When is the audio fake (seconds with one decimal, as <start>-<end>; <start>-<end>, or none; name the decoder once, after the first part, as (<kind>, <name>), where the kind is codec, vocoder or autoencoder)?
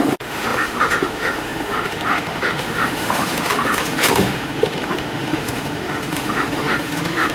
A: 0.0-7.3 (autoencoder, DAC-VAE)